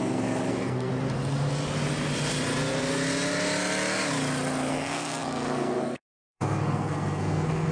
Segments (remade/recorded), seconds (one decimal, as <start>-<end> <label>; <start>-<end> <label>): 0.0-0.9 remade; 0.9-4.7 recorded; 4.7-7.7 remade